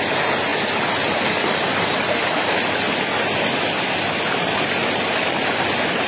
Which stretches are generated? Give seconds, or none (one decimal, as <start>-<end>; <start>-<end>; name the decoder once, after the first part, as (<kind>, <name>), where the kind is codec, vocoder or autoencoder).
none